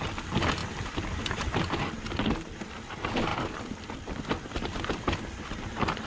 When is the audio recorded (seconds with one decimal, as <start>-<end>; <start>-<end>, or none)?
0.0-0.6; 1.6-3.3; 5.6-6.1